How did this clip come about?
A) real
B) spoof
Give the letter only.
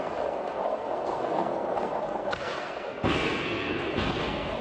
B